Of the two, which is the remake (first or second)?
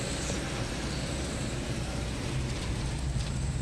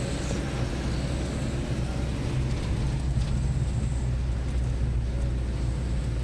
first